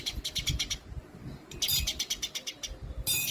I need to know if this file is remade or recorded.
remade